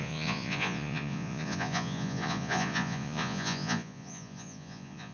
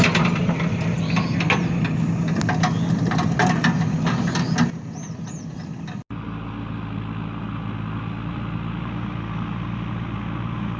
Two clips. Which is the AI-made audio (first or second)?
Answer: first